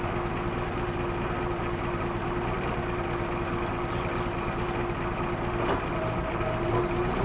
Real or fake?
real